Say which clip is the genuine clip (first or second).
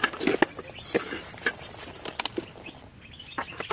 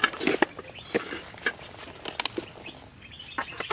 second